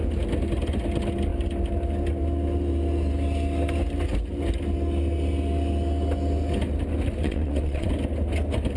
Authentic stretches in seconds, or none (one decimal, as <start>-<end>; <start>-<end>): 0.0-7.2; 7.9-8.8